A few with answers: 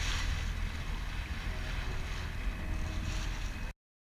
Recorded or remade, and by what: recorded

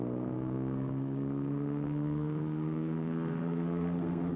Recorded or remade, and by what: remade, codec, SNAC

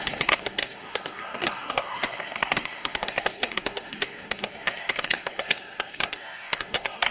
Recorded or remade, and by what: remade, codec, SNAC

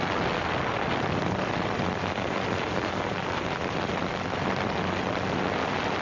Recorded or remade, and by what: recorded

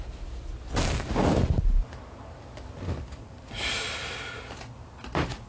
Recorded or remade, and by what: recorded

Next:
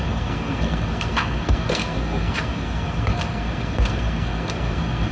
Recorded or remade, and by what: remade, codec, SNAC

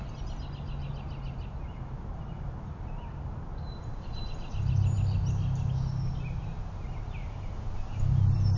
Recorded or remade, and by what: recorded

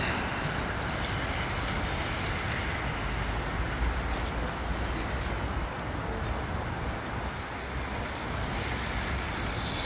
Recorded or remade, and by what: recorded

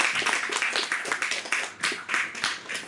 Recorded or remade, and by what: recorded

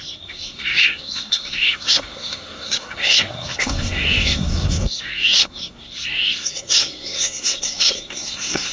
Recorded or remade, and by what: remade, codec, SNAC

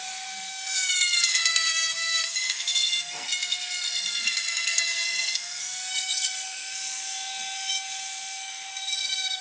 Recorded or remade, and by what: remade, codec, SNAC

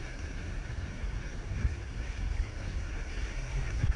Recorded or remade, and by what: remade, codec, SNAC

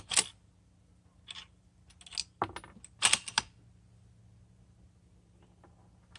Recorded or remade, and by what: recorded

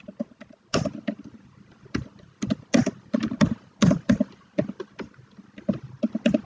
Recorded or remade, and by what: recorded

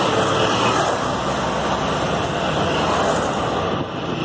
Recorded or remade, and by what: recorded